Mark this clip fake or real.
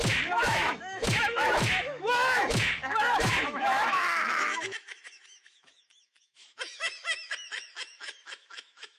fake